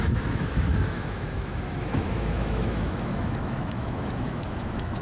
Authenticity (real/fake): fake